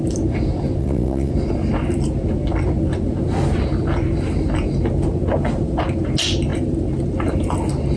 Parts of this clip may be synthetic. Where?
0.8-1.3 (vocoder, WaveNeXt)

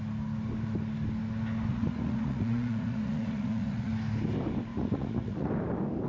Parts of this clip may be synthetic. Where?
1.7-3.9 (vocoder, Vocos); 4.7-5.5

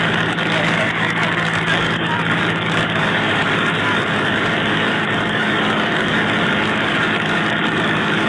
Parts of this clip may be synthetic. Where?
0.0-8.3 (codec, DAC)

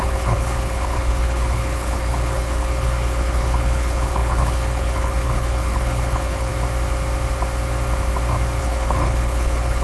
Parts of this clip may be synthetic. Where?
0.0-6.5 (codec, HILCodec); 8.6-9.8

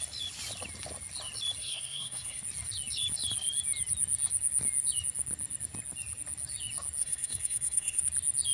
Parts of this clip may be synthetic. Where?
1.6-2.4 (codec, SNAC); 7.0-8.0

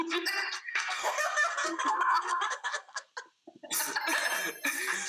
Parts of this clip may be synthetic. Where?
0.7-3.1 (codec, SNAC)